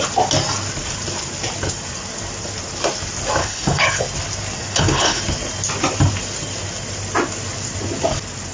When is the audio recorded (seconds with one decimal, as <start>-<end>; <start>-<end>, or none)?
0.0-3.4; 4.0-4.6; 5.2-8.5